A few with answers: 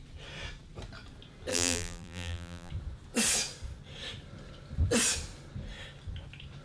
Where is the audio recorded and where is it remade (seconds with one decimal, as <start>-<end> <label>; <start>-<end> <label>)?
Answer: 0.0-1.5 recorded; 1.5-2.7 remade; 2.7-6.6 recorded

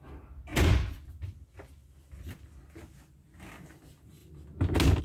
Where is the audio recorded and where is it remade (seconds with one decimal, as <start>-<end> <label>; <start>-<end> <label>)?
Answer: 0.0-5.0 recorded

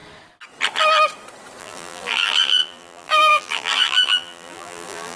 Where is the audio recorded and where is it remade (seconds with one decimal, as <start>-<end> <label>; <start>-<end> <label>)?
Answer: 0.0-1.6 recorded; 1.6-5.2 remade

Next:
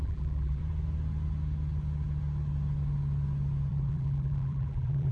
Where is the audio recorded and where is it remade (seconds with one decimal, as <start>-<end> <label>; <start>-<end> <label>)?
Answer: 0.0-0.6 remade; 0.6-3.7 recorded; 3.7-5.1 remade

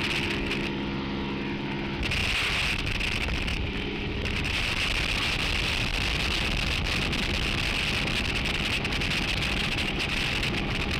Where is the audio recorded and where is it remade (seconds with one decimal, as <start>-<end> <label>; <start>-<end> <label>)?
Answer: 0.0-3.5 recorded; 3.5-4.7 remade; 4.7-9.6 recorded; 9.6-10.2 remade; 10.2-11.0 recorded